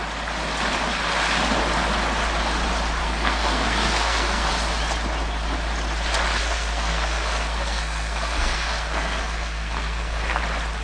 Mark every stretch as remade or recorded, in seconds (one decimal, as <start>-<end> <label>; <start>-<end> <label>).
0.0-3.0 recorded; 3.0-4.5 remade; 4.5-6.4 recorded; 6.4-10.4 remade; 10.4-10.8 recorded